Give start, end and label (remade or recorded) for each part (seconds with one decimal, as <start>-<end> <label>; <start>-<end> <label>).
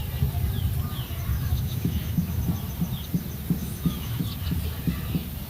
0.0-1.3 recorded; 1.3-2.4 remade; 2.4-3.6 recorded; 3.6-4.2 remade; 4.2-5.5 recorded